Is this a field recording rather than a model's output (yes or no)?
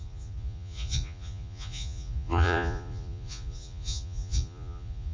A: no